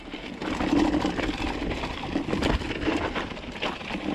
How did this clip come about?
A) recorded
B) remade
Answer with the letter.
A